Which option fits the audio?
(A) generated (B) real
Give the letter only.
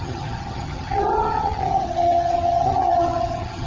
A